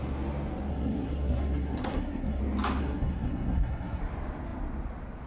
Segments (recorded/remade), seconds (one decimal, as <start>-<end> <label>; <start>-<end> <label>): 0.0-0.7 recorded; 0.7-2.4 remade; 2.4-2.8 recorded; 2.8-4.0 remade; 4.0-5.3 recorded